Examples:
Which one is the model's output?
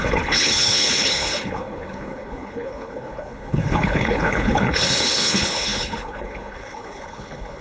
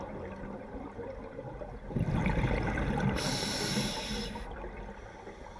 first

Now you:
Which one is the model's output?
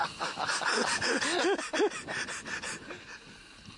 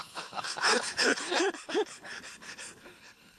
second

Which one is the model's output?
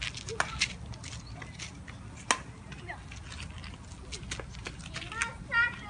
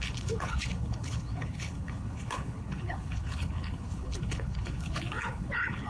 second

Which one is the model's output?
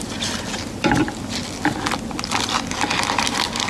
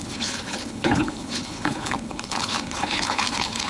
second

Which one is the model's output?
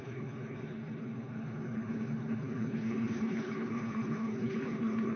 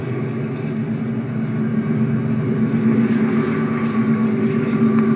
first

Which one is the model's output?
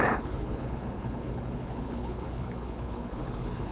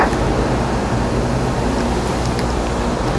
first